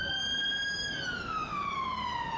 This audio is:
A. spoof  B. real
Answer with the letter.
B